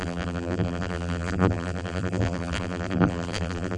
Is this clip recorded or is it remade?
remade